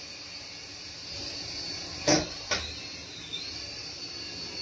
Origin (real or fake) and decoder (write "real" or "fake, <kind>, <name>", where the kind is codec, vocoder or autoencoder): real